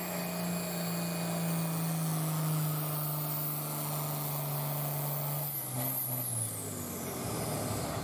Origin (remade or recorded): recorded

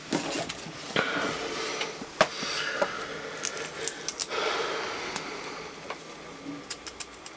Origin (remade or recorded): recorded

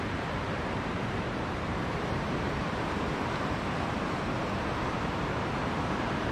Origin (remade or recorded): remade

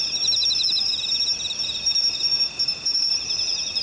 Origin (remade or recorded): recorded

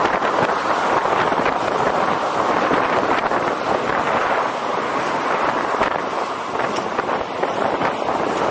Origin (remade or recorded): remade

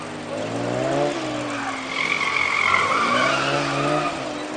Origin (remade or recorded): recorded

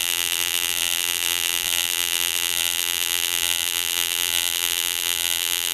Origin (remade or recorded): remade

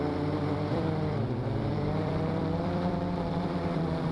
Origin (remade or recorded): remade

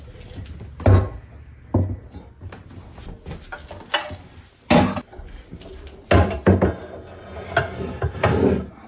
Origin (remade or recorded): recorded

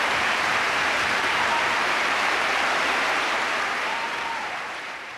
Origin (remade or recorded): remade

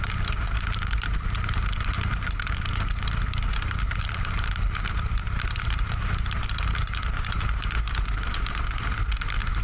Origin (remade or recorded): remade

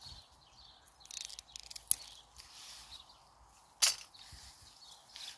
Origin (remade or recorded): recorded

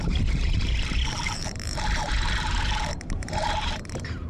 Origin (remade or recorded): remade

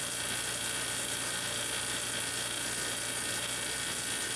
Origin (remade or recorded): recorded